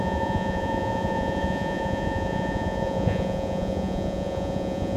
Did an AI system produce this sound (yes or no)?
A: yes